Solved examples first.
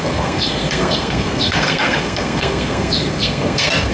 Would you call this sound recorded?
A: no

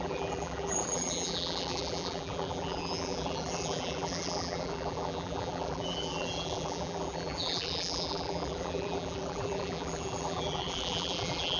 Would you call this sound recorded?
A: no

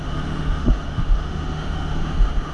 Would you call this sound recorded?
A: no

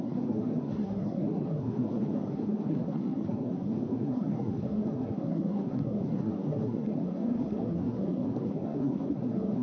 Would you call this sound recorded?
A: no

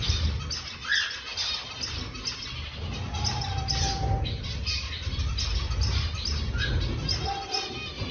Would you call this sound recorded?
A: yes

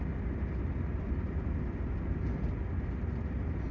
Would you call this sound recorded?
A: yes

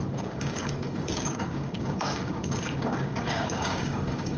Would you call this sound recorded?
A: no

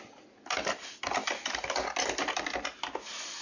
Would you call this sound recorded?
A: yes